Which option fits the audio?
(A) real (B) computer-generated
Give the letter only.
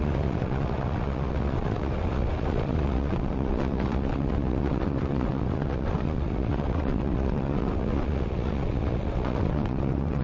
B